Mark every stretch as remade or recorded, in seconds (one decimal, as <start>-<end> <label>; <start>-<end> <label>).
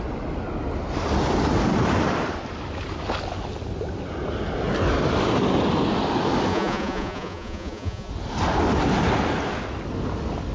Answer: 0.0-6.5 recorded; 6.5-8.1 remade; 8.1-10.5 recorded